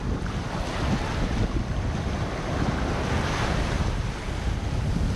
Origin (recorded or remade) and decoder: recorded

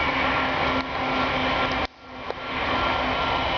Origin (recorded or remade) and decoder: recorded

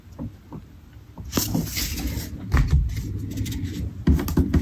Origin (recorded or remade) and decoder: recorded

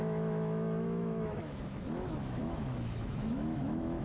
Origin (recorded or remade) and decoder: remade, autoencoder, DAC-VAE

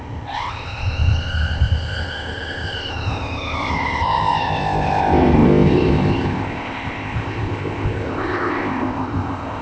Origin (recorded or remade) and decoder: remade, codec, ZipCodec